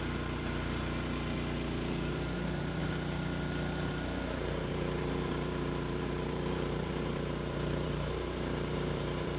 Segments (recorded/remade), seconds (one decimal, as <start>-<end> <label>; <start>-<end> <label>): 0.0-2.8 remade; 2.8-3.9 recorded; 3.9-9.4 remade